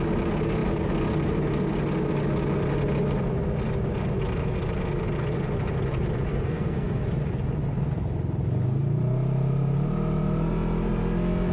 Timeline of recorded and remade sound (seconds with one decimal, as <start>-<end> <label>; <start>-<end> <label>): 0.0-6.3 recorded; 6.3-7.0 remade; 7.0-11.5 recorded